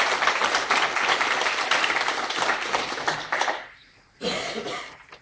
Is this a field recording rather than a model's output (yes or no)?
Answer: yes